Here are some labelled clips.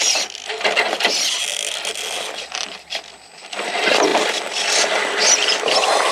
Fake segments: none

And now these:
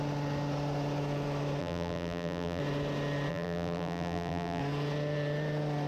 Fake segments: 1.6-2.6 (vocoder, BigVGAN v2); 3.3-4.6

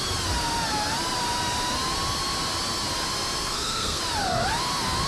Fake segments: 3.4-4.0 (codec, SNAC)

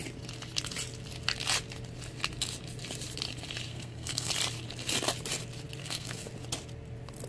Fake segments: 3.7-4.3 (codec, SNAC); 5.8-6.3

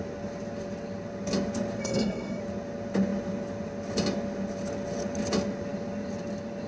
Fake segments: 1.8-2.4 (codec, SNAC)

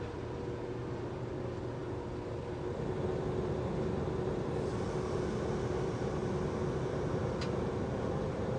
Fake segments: none